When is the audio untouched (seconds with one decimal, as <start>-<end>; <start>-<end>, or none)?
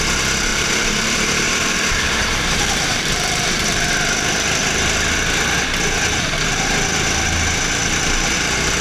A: 0.0-0.5; 3.9-8.8